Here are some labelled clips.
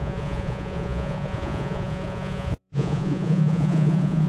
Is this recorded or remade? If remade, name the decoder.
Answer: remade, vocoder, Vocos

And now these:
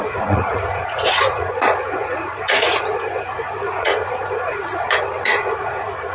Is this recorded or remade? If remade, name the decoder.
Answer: remade, vocoder, Vocos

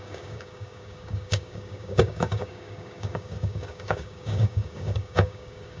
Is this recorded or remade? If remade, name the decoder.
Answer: remade, codec, DAC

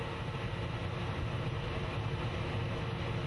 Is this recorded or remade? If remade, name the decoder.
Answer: recorded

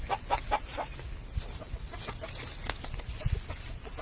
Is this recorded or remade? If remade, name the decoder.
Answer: recorded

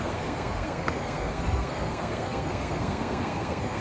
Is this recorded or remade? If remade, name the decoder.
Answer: remade, codec, SNAC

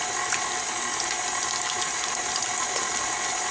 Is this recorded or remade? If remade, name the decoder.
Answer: recorded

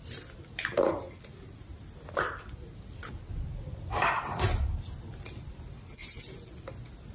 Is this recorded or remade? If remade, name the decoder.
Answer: recorded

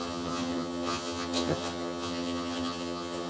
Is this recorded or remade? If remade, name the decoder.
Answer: remade, vocoder, HiFi-GAN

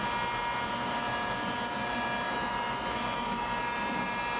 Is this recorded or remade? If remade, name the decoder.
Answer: recorded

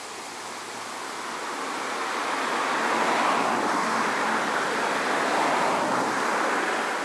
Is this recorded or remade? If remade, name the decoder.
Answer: recorded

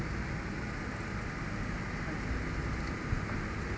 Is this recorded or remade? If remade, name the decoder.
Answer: recorded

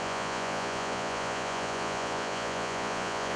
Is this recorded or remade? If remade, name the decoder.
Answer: remade, vocoder, Vocos